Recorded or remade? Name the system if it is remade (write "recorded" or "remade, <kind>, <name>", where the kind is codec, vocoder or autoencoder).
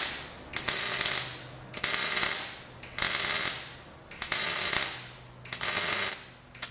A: recorded